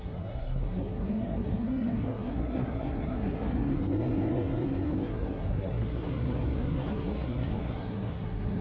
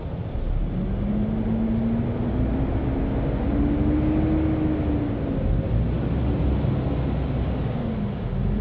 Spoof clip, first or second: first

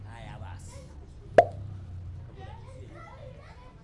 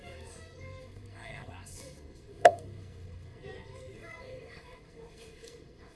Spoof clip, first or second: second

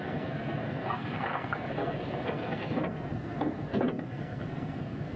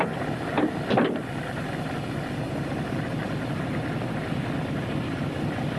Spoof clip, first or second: first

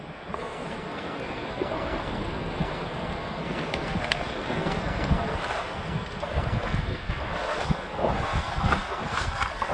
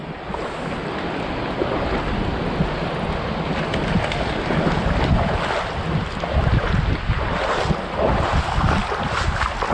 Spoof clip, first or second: first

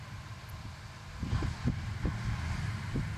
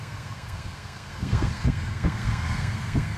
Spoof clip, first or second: second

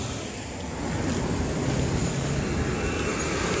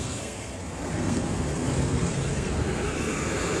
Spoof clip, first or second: second